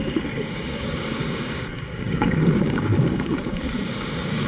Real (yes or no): no